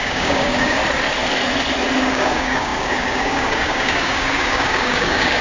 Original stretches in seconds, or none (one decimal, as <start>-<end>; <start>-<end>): 0.8-2.1